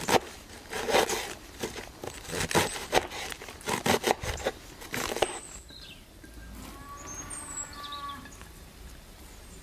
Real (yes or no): yes